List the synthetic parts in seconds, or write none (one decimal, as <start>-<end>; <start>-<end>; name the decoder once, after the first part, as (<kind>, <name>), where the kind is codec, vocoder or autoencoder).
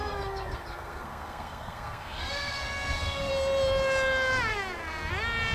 0.0-3.3 (codec, SNAC); 4.5-5.1